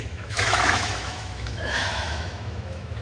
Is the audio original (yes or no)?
no